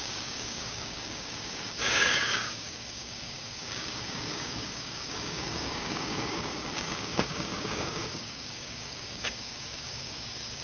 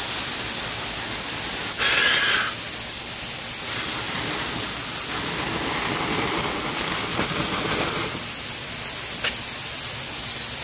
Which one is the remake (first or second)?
first